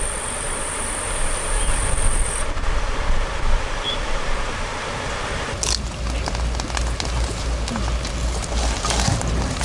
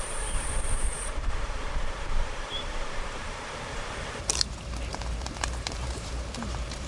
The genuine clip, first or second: first